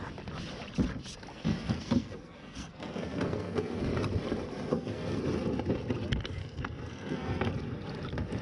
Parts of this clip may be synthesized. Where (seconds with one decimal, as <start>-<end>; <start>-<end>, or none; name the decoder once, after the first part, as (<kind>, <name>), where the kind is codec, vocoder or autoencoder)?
1.3-3.8 (codec, SNAC); 4.7-5.2; 6.4-7.5